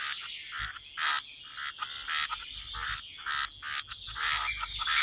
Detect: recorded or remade recorded